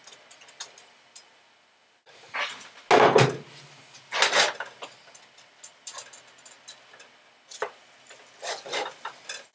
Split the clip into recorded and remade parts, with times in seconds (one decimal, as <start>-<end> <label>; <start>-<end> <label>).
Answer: 0.0-9.5 recorded